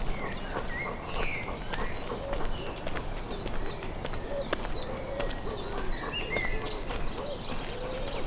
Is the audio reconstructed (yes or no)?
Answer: no